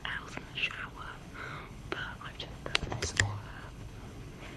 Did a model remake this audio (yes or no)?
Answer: yes